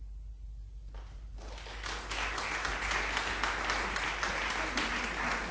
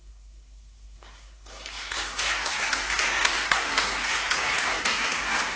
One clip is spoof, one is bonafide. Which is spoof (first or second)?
second